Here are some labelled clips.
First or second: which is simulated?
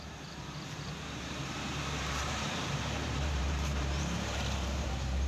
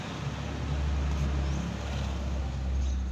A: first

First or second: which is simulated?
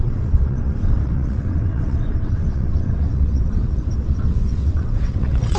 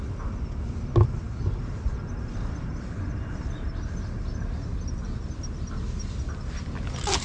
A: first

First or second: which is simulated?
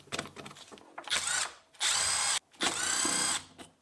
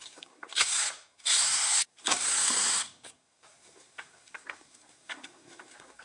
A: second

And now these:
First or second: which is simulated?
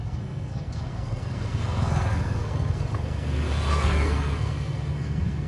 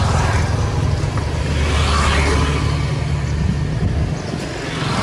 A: first